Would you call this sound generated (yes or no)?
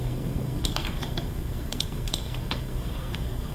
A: yes